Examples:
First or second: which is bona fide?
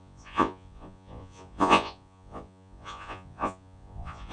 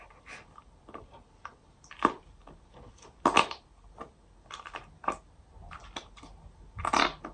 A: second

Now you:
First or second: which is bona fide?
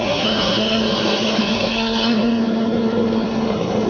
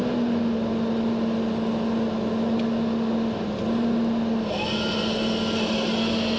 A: second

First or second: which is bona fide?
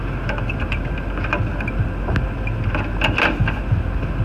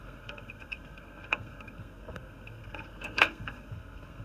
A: first